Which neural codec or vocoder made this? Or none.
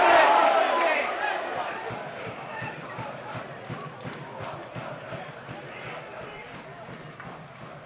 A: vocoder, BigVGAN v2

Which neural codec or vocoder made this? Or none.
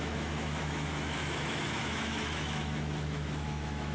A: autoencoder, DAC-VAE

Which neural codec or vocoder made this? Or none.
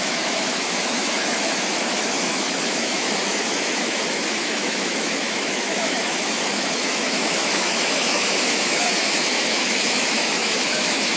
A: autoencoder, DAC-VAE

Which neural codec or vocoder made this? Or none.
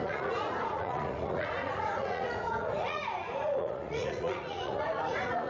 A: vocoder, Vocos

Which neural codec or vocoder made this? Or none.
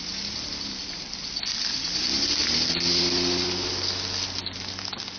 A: none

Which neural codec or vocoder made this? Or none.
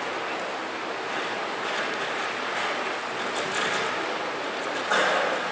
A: none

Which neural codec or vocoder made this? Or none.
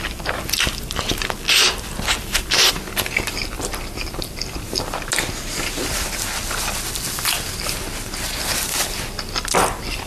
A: none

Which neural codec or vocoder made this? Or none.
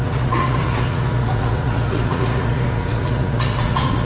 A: vocoder, Vocos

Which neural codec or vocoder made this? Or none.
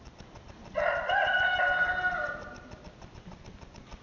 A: none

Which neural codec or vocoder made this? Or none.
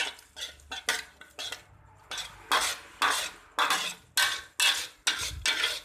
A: none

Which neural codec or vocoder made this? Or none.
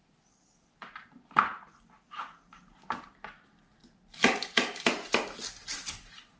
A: none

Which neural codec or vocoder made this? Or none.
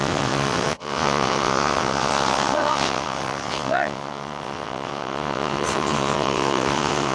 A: vocoder, WaveNeXt